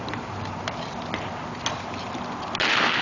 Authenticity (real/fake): real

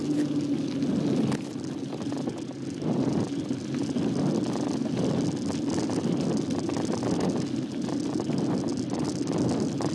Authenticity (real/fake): real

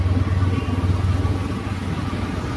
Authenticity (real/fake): real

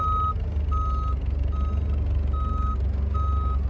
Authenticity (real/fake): real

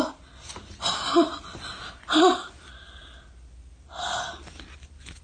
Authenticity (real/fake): real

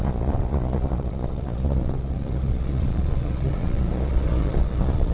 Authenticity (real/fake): fake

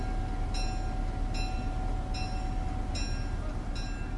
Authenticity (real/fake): real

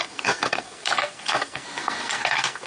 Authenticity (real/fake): fake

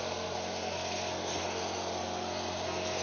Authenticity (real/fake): fake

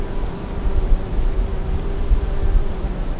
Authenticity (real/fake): real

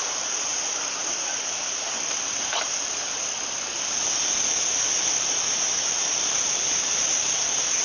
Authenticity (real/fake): real